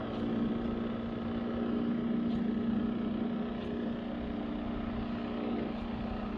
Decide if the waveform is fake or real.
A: real